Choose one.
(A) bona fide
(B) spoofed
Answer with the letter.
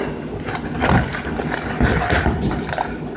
A